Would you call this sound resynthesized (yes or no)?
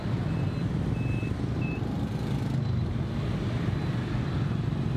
no